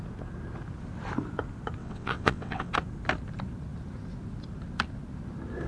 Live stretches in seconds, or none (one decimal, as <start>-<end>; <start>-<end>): 0.0-1.8; 2.7-5.7